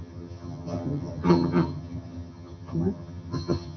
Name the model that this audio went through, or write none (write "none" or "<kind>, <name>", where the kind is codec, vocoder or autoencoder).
vocoder, HiFi-GAN